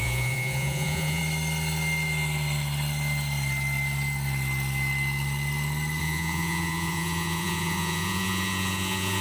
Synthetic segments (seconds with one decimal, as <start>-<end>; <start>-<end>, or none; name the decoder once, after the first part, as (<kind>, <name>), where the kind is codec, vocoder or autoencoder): 0.0-1.2 (vocoder, Vocos); 6.0-9.2